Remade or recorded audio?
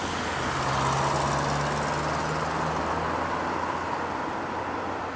recorded